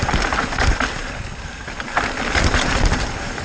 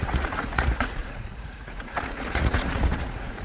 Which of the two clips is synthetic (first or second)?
second